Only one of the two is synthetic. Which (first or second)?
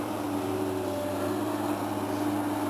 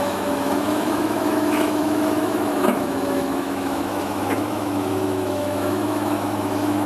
second